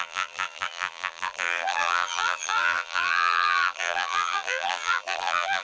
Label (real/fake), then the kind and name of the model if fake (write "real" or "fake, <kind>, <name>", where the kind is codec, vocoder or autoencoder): fake, vocoder, BigVGAN v2